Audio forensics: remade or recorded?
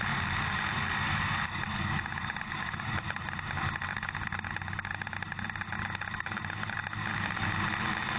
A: recorded